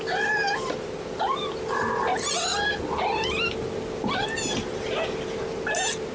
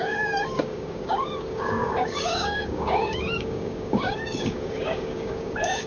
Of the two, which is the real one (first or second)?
first